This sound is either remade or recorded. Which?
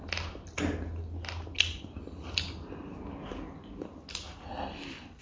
recorded